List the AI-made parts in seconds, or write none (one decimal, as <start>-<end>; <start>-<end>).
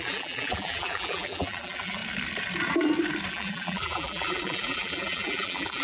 0.0-2.0; 3.3-5.8